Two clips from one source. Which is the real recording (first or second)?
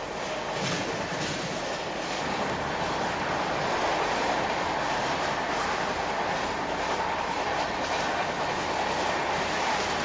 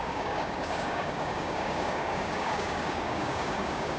first